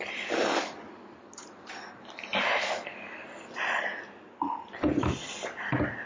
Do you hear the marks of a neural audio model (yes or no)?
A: no